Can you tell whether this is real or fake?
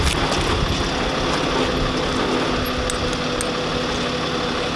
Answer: real